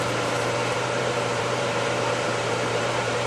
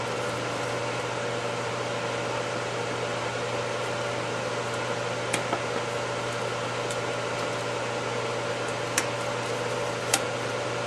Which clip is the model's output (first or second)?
first